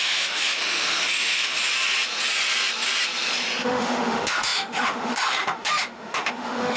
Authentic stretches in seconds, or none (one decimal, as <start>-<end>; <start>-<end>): 1.6-3.6